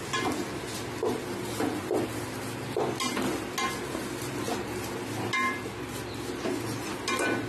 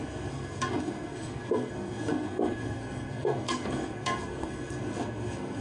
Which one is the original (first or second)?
first